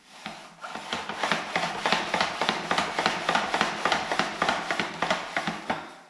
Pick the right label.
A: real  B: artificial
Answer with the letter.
A